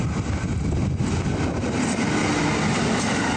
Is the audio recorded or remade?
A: recorded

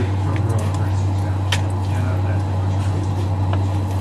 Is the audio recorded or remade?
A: recorded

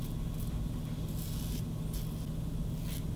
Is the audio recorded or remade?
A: recorded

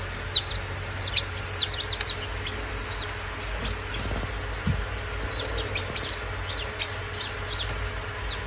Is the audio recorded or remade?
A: recorded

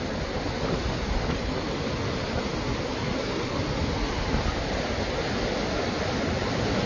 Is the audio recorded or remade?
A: recorded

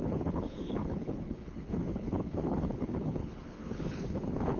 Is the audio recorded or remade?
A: remade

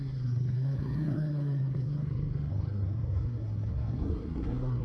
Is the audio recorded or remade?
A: remade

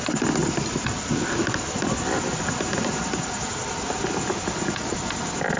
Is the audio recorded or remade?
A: recorded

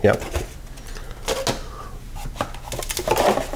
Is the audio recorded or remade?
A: recorded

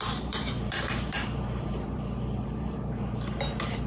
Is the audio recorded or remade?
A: remade